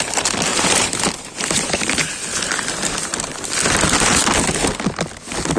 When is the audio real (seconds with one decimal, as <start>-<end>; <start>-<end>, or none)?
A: 0.0-0.5; 1.7-5.6